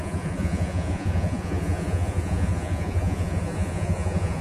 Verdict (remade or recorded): remade